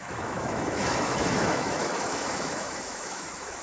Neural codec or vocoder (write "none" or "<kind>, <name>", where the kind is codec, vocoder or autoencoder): autoencoder, DAC-VAE